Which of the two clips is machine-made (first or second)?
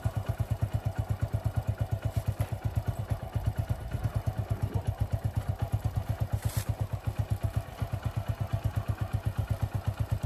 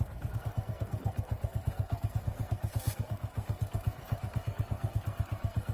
second